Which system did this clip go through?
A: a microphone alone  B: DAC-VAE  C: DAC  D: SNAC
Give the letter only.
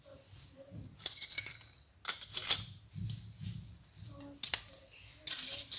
A